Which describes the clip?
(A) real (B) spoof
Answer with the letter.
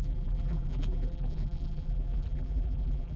B